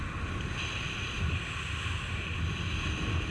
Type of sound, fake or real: real